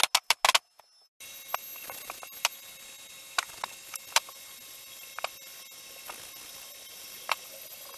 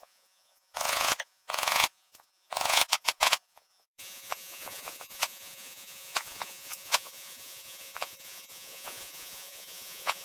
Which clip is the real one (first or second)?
first